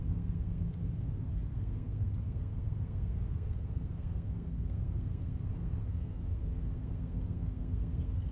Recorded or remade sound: remade